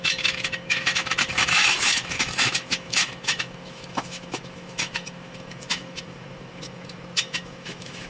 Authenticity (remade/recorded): remade